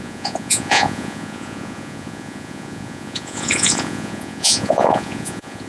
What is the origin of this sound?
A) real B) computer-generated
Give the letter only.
B